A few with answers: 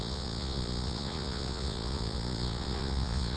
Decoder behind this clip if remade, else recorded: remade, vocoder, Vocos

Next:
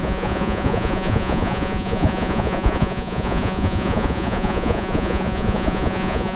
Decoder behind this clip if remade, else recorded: remade, vocoder, Vocos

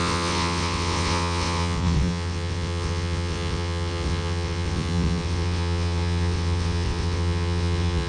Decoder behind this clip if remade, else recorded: remade, vocoder, WaveNeXt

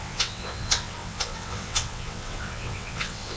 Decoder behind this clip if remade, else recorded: remade, vocoder, WaveNeXt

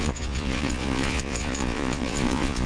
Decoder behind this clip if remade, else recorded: remade, vocoder, Vocos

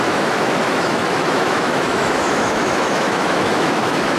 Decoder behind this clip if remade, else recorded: remade, autoencoder, DAC-VAE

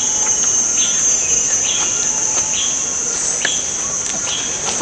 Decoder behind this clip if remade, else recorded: recorded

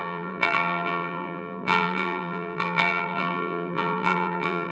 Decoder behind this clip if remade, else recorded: remade, vocoder, BigVGAN v2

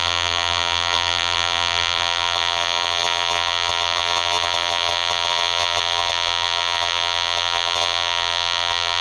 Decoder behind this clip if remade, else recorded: remade, vocoder, BigVGAN v2